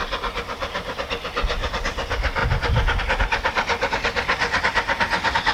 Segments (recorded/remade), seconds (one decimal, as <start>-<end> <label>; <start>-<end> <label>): 0.0-5.5 recorded